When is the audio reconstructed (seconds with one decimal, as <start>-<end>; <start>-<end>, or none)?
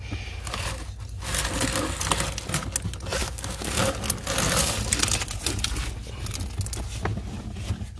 3.2-3.8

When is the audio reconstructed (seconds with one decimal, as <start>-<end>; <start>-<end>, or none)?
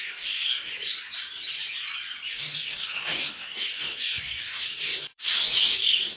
0.0-0.7; 2.3-6.2